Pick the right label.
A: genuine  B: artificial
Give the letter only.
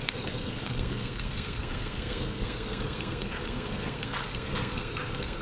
B